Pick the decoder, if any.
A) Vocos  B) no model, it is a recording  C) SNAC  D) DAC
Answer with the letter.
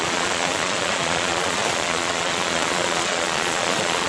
A